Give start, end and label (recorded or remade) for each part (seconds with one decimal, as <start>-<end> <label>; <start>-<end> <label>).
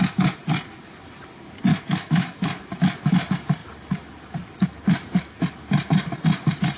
0.0-1.7 recorded; 1.7-2.6 remade; 2.6-6.8 recorded